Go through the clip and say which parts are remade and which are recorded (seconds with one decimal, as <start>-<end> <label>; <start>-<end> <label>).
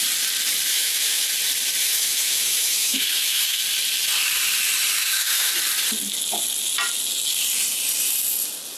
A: 0.0-0.7 recorded; 0.7-1.3 remade; 1.3-1.8 recorded; 1.8-3.6 remade; 3.6-5.0 recorded; 5.0-5.5 remade; 5.5-8.8 recorded